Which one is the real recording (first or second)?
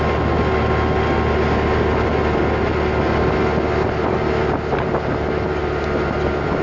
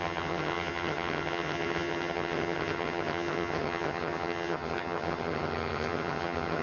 first